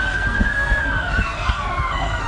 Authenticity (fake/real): fake